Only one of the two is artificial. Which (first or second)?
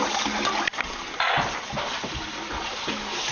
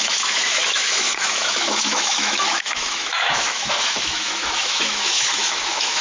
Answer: second